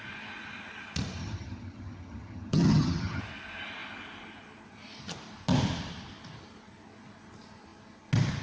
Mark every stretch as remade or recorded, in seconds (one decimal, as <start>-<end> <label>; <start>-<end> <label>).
0.0-1.2 recorded; 1.2-3.2 remade; 3.2-8.4 recorded

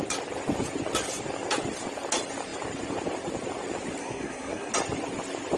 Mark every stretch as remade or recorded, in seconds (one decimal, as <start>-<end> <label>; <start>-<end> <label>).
0.0-4.0 recorded; 4.0-4.7 remade; 4.7-5.6 recorded

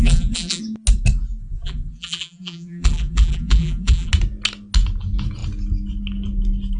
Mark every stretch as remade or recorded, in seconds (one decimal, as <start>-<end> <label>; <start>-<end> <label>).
0.0-0.6 remade; 0.6-1.4 recorded; 1.4-4.1 remade; 4.1-6.8 recorded

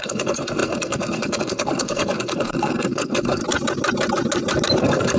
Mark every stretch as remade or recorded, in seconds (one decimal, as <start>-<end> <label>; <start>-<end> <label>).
0.0-3.4 remade; 3.4-4.8 recorded; 4.8-5.2 remade

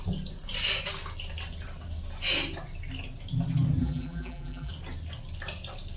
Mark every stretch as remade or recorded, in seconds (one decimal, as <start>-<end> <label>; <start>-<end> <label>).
0.0-3.8 recorded; 3.8-4.7 remade; 4.7-6.0 recorded

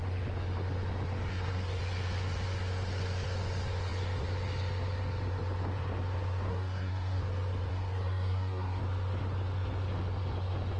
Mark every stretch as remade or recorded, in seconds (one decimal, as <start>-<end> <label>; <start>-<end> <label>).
0.0-1.3 recorded; 1.3-1.8 remade; 1.8-6.5 recorded; 6.5-7.2 remade; 7.2-7.7 recorded; 7.7-8.8 remade; 8.8-10.8 recorded

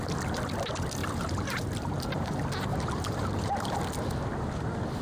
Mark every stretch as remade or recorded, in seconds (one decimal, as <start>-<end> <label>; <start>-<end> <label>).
0.0-1.0 recorded; 1.0-2.3 remade; 2.3-2.7 recorded; 2.7-3.5 remade; 3.5-5.0 recorded